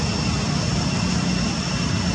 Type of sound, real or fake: real